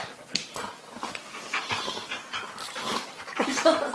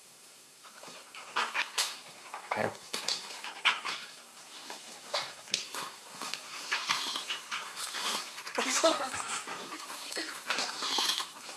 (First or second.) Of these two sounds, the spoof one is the second